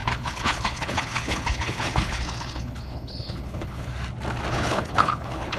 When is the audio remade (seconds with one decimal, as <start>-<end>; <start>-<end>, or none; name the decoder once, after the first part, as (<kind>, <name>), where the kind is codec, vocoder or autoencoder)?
0.0-3.9 (codec, HILCodec); 4.5-5.6